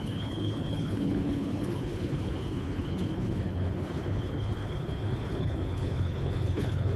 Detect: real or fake fake